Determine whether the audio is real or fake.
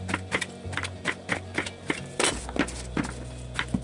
real